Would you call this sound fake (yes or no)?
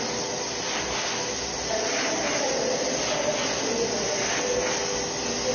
no